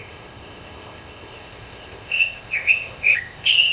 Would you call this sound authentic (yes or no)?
no